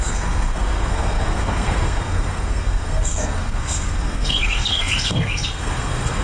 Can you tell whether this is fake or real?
fake